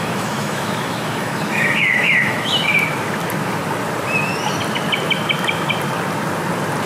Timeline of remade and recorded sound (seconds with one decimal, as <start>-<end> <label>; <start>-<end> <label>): 0.0-2.7 remade; 2.7-6.9 recorded

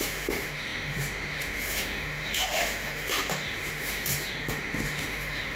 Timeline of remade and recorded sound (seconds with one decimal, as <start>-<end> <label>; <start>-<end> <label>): 0.0-5.6 remade